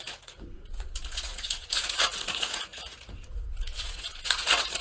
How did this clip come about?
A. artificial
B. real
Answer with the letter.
A